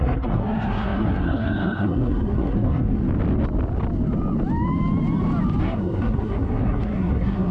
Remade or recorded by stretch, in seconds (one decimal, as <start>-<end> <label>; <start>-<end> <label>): 0.0-3.0 remade; 3.0-5.6 recorded; 5.6-7.5 remade